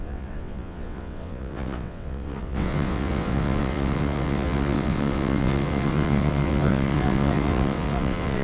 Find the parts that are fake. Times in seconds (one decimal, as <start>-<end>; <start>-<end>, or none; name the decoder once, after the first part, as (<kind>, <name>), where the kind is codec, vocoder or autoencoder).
0.0-8.4 (vocoder, WaveNeXt)

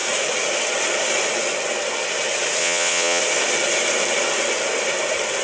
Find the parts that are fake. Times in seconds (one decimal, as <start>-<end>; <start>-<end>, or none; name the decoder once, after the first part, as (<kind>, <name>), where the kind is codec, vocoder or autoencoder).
2.6-3.2 (vocoder, WaveNeXt)

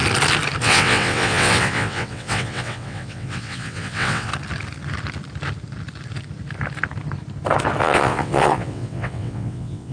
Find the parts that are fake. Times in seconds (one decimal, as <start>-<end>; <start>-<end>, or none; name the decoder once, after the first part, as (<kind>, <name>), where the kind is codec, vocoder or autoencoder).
0.6-4.3 (vocoder, WaveNeXt); 7.8-9.9

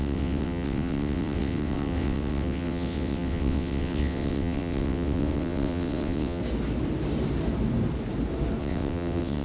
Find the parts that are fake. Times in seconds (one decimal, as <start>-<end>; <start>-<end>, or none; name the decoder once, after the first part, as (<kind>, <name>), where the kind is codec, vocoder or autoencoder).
0.0-6.4 (vocoder, WaveNeXt); 8.6-9.4

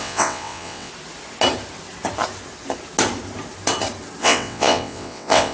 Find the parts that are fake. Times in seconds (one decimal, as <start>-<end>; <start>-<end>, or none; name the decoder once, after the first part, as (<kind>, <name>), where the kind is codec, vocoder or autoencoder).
0.0-0.9 (vocoder, WaveNeXt); 4.2-5.5